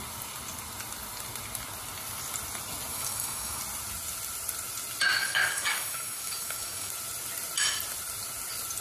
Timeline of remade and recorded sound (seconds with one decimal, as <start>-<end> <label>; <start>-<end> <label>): 0.0-2.9 recorded; 2.9-3.6 remade; 3.6-5.2 recorded; 5.2-6.9 remade; 6.9-8.8 recorded